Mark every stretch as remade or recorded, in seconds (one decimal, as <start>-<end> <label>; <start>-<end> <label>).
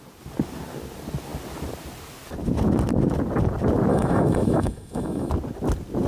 0.0-3.9 recorded; 3.9-5.3 remade; 5.3-6.1 recorded